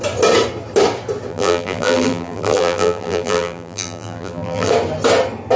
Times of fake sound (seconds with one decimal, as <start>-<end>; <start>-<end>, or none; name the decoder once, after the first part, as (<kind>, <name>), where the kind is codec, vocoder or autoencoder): 1.3-4.7 (vocoder, BigVGAN v2)